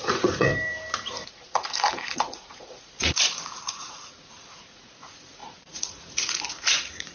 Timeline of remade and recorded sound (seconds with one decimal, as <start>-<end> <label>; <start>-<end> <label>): 0.0-0.5 remade; 0.5-1.2 recorded; 1.2-7.1 remade